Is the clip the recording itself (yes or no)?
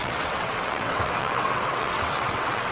no